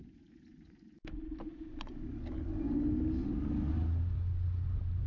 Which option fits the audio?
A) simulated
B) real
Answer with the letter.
B